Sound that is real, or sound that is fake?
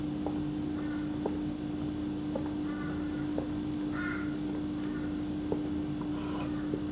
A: real